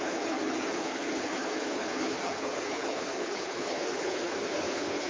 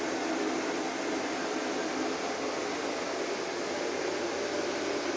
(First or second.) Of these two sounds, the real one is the second